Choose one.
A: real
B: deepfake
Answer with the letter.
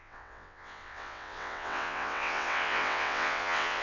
B